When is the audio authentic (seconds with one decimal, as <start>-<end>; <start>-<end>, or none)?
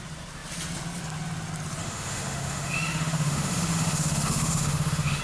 0.0-1.8